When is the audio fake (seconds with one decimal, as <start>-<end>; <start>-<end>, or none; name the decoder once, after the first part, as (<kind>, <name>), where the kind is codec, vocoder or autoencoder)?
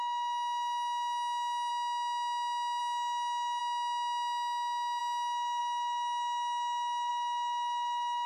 0.0-1.7 (autoencoder, DAC-VAE); 2.8-3.6; 5.0-8.3